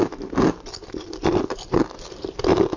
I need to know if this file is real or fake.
real